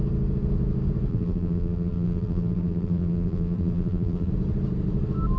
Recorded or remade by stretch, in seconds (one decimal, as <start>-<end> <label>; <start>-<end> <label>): 0.0-1.1 recorded; 1.1-4.3 remade; 4.3-5.4 recorded